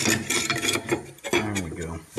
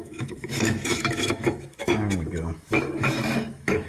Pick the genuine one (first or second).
first